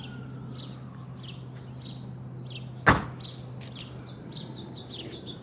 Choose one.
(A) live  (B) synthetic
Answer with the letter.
A